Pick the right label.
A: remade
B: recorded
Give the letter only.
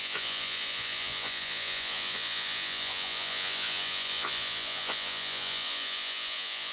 A